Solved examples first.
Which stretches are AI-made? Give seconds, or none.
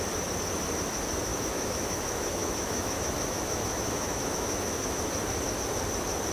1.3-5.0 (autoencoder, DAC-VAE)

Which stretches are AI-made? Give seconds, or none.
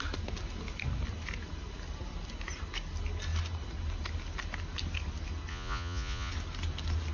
5.5-6.3 (vocoder, Vocos)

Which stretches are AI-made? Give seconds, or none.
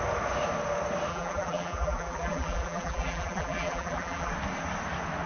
1.1-4.3 (vocoder, BigVGAN v2)